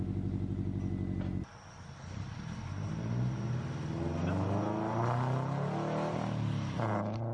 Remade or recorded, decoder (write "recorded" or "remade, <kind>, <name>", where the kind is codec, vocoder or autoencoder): recorded